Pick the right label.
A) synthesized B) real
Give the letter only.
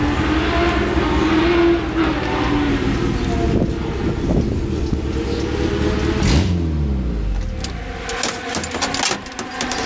B